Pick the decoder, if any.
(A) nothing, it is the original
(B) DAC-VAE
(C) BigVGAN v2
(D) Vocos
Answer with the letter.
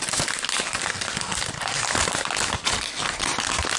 A